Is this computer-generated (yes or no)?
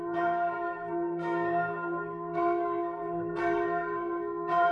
yes